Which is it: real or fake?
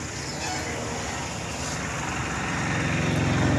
real